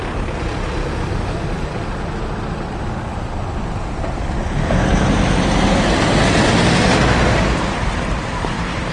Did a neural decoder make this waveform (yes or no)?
no